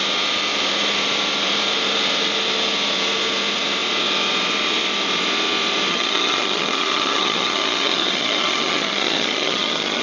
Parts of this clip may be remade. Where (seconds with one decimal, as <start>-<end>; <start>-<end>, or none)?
5.9-10.0